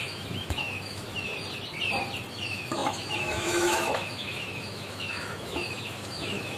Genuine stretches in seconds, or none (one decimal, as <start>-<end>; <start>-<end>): 1.3-2.3